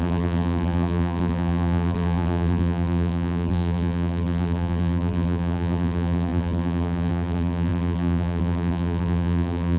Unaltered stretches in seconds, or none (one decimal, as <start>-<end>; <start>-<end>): none